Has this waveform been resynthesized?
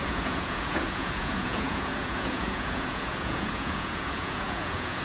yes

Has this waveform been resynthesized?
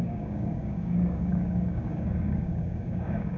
yes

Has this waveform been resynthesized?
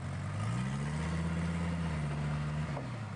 no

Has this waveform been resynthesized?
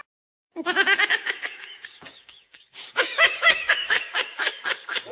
yes